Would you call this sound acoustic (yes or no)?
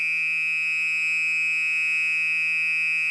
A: yes